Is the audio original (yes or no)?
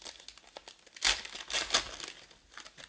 yes